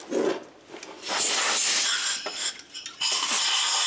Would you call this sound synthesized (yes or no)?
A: no